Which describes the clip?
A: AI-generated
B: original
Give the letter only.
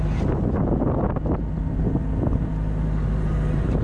B